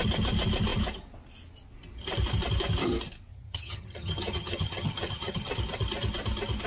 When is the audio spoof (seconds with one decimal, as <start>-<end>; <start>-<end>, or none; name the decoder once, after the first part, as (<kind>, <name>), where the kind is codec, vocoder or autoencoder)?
3.3-5.5 (vocoder, HiFi-GAN)